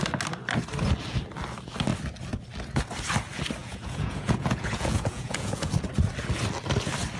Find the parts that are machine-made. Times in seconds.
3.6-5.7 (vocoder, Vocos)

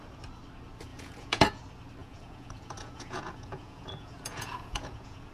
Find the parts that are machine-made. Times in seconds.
0.9-1.6 (vocoder, Vocos); 2.0-5.3